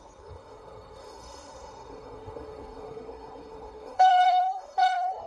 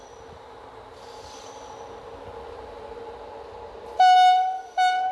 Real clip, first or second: second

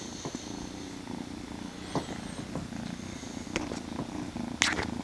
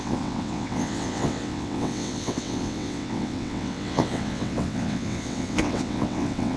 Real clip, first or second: first